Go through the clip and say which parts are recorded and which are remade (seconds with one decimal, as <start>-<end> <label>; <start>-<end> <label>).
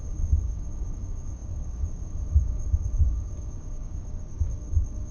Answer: 0.0-5.1 remade